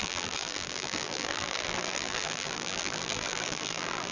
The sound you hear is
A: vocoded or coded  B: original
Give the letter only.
A